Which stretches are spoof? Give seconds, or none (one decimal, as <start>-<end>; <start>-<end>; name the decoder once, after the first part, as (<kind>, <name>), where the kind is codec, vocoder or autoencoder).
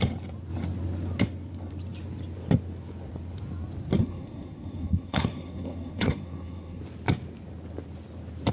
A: 4.0-6.8 (codec, SNAC)